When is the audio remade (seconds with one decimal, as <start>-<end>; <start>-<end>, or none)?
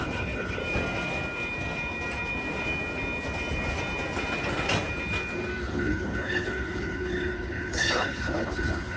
0.0-0.6; 5.6-9.0